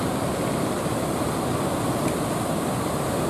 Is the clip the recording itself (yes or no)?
yes